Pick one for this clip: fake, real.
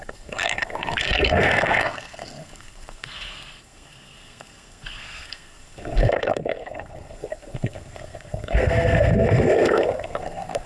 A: fake